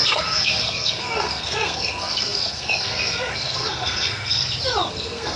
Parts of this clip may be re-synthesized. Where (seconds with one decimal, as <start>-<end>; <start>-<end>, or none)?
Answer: 0.0-4.4; 4.9-5.4